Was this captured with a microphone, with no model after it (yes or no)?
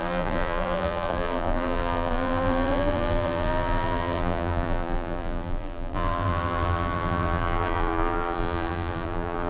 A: no